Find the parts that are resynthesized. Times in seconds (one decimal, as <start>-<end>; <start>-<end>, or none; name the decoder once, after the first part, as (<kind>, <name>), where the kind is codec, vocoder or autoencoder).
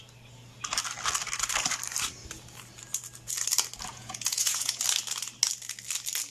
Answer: 3.9-4.8 (vocoder, Vocos)